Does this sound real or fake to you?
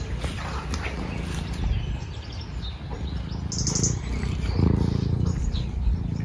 real